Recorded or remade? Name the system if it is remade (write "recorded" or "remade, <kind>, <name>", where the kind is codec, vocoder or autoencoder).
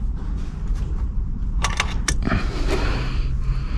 recorded